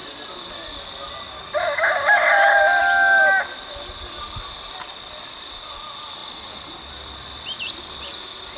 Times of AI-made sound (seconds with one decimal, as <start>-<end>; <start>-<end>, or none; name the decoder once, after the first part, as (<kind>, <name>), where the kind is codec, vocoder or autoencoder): none